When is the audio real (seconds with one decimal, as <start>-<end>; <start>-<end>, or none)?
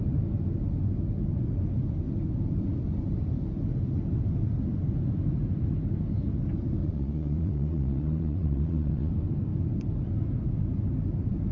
0.0-6.8; 9.1-11.5